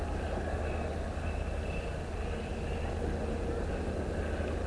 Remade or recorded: recorded